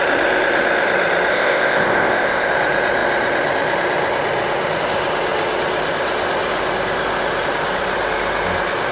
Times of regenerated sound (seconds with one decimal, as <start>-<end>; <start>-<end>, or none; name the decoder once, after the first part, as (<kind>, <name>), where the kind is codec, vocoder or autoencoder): 1.3-2.5 (codec, ZipCodec)